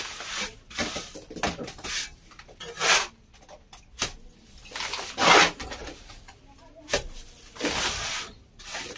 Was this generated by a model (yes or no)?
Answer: no